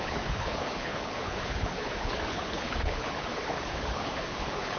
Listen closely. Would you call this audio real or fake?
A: fake